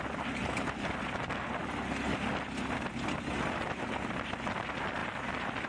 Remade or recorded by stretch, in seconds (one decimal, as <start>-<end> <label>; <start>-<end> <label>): 0.0-0.4 recorded; 0.4-1.0 remade; 1.0-1.6 recorded; 1.6-2.3 remade; 2.3-5.0 recorded; 5.0-5.7 remade